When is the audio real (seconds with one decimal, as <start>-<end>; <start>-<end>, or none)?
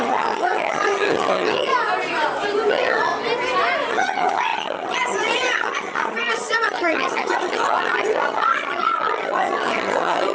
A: 1.7-2.7; 3.1-3.9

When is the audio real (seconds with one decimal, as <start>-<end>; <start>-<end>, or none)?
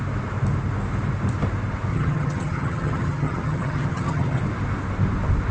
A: 0.0-1.9; 4.4-5.5